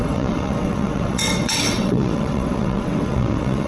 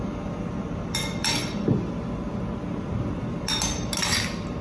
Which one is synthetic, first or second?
first